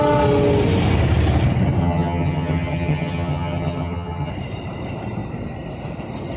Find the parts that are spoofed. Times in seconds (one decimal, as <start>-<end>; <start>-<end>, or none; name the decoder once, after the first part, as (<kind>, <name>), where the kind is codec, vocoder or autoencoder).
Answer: 1.8-4.3 (vocoder, HiFi-GAN)

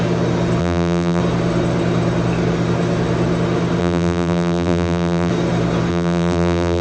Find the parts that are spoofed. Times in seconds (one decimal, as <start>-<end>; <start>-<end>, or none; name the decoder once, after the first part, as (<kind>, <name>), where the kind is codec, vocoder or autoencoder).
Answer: 0.6-1.2 (vocoder, BigVGAN v2); 3.8-5.3; 5.9-6.8

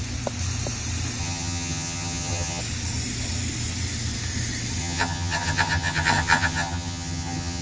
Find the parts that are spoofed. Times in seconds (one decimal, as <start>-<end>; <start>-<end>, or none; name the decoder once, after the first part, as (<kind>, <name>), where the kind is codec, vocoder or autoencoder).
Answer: 1.2-2.6 (vocoder, HiFi-GAN); 4.8-7.6

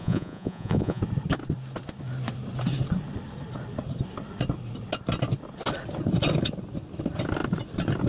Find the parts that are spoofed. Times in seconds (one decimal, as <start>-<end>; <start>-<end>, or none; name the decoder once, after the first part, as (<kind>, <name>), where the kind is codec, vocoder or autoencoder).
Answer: 0.0-1.0 (vocoder, Vocos)